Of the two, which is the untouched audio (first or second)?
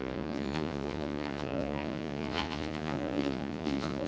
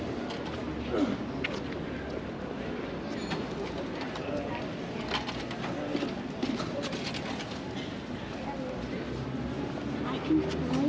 second